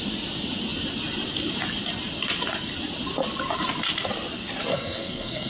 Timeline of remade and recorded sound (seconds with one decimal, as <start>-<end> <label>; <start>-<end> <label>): 0.0-4.7 recorded; 4.7-5.5 remade